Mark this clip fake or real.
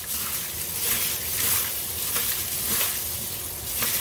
real